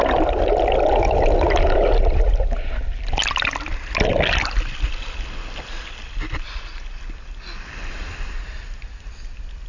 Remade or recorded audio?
recorded